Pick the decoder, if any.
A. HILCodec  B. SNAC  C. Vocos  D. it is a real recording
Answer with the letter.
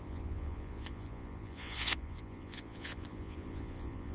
C